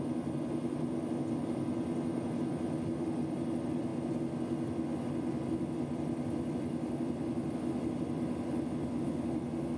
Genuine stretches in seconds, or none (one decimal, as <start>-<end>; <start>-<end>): 0.0-9.8